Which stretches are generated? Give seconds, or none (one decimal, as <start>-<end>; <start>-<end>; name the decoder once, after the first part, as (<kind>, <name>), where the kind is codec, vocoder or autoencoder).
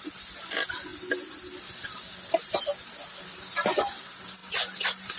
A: none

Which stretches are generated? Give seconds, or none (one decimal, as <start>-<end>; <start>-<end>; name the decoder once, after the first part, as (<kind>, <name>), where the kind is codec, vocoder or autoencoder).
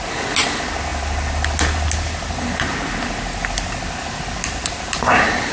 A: none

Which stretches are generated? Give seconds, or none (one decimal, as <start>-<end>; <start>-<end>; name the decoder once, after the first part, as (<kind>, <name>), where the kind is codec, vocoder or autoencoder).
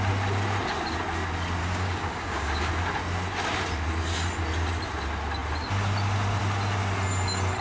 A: 1.6-2.7 (codec, DAC)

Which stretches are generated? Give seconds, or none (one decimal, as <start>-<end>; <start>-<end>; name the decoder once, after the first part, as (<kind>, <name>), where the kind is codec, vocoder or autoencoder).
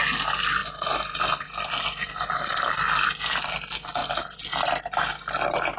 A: none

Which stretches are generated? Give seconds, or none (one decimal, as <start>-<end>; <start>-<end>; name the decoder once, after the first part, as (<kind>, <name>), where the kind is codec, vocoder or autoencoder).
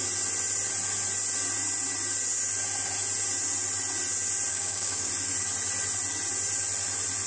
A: 4.5-5.1 (codec, DAC)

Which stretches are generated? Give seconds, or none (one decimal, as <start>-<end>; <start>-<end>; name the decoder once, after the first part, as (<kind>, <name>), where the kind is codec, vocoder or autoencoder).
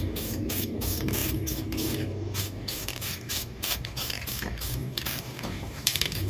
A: 0.0-6.3 (codec, DAC)